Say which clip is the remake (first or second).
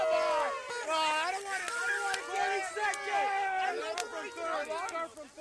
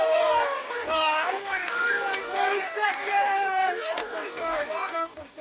second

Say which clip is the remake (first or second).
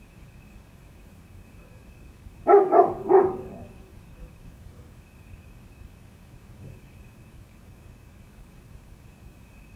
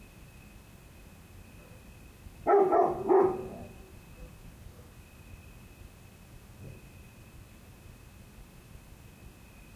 first